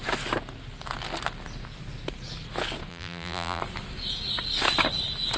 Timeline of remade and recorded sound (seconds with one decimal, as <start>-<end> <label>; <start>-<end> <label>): 0.0-2.9 recorded; 2.9-3.6 remade; 3.6-5.4 recorded